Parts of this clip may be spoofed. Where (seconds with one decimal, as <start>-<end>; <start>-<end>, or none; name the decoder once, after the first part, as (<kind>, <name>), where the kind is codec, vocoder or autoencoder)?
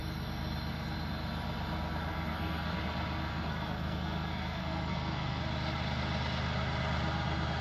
2.1-2.8 (codec, SNAC); 3.3-5.4